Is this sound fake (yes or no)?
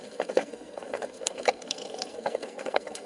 yes